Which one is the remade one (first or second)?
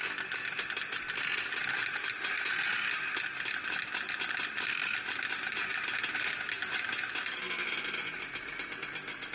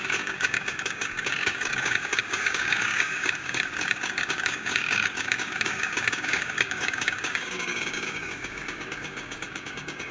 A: second